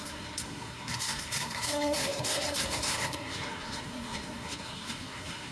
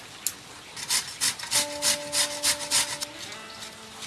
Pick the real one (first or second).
second